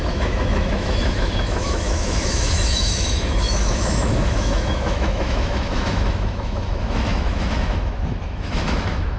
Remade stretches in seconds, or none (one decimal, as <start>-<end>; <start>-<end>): 0.0-9.2